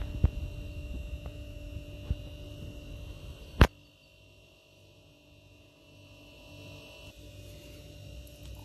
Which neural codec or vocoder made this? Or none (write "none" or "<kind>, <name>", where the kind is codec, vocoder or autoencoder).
none